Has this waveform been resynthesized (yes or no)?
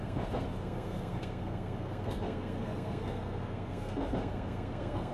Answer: yes